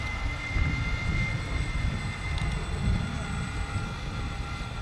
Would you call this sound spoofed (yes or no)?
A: yes